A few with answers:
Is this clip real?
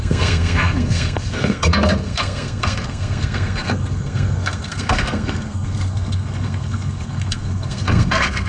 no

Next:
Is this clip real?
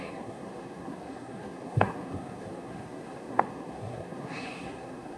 no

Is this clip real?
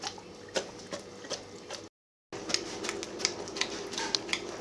yes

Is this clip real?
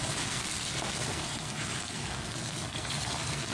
no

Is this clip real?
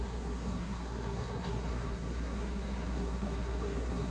no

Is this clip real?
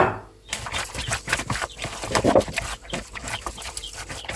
yes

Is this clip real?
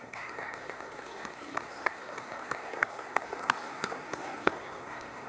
no